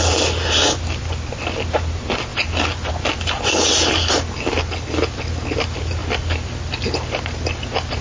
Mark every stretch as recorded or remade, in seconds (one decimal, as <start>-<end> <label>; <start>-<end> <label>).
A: 0.0-8.0 recorded